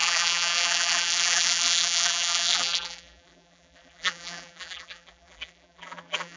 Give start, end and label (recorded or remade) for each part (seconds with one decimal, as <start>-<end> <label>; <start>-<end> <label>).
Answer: 0.0-6.4 remade